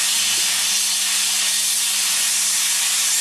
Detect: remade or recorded recorded